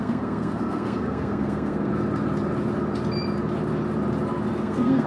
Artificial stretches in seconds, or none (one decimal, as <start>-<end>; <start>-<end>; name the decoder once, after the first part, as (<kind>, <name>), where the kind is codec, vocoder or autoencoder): 0.0-1.9 (codec, SNAC); 4.6-5.1